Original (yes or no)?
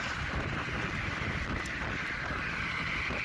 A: yes